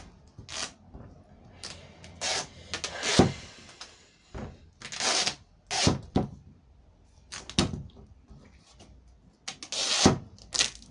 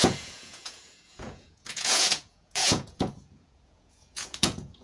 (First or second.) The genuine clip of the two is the first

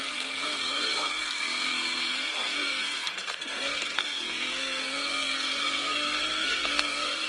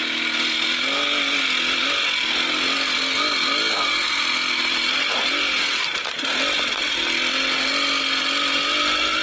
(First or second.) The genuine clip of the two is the second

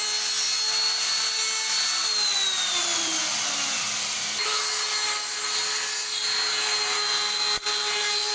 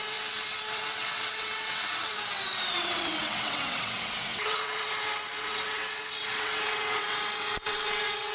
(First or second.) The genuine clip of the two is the first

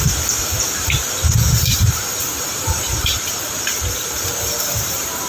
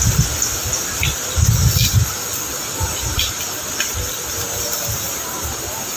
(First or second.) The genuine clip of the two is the second